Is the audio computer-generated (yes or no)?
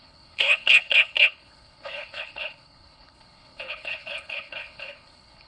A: yes